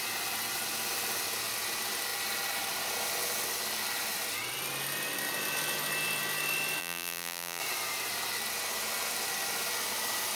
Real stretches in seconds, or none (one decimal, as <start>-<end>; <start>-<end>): 0.0-6.8; 7.6-10.3